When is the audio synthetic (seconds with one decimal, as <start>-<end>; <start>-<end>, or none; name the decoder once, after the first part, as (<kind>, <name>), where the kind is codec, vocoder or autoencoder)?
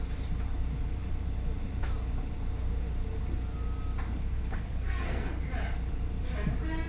4.2-5.4 (codec, SNAC)